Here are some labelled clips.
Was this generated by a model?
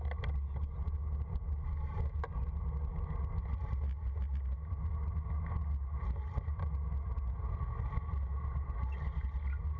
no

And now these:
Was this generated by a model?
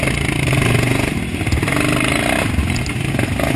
no